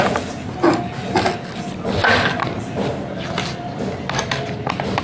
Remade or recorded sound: recorded